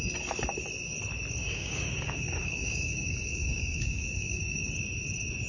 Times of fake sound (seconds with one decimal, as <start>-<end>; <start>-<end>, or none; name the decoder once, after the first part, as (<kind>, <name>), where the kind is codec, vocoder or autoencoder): 1.4-4.7 (codec, DAC)